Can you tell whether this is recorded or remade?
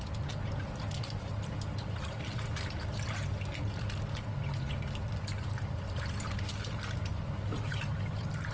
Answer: recorded